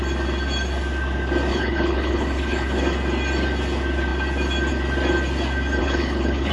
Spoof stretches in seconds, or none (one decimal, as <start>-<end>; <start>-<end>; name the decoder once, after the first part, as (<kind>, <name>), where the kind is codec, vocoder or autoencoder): 1.5-2.8 (codec, HILCodec); 5.8-6.5